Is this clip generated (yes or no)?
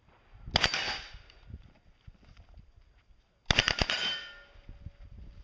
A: no